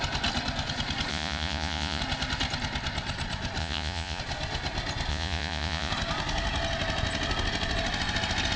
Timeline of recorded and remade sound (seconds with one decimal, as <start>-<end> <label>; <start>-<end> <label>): 0.0-1.1 recorded; 1.1-2.0 remade; 2.0-3.6 recorded; 3.6-4.2 remade; 4.2-5.1 recorded; 5.1-5.9 remade; 5.9-8.6 recorded